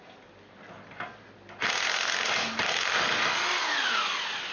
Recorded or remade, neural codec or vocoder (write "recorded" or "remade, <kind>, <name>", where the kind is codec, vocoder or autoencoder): recorded